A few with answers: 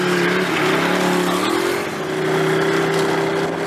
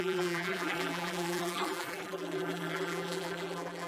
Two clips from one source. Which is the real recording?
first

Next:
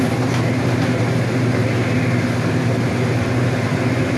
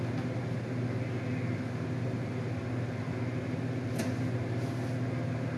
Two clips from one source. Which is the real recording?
second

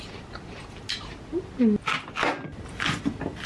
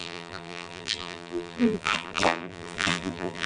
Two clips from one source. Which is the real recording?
first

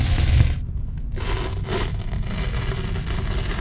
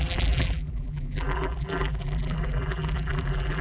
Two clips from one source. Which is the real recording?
first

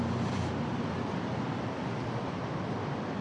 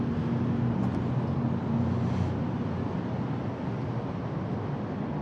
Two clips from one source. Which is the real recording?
second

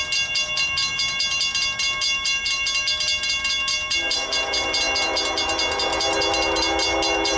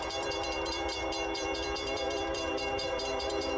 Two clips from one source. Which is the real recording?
first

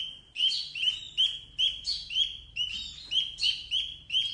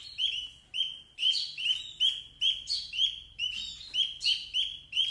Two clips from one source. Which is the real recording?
second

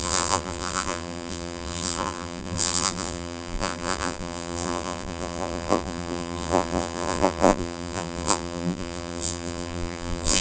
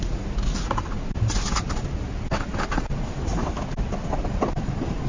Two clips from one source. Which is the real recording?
second